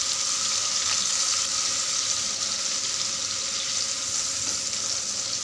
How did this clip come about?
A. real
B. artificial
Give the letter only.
A